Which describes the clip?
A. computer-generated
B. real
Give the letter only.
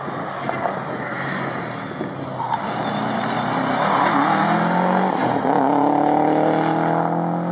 B